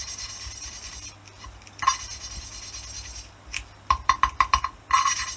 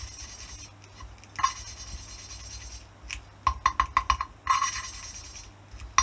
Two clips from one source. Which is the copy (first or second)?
first